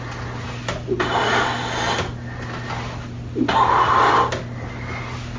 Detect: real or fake real